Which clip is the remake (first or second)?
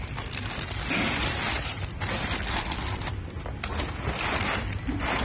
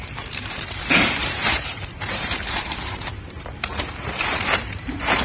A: second